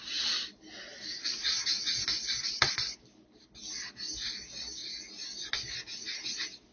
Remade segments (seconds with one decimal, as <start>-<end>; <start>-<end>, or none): none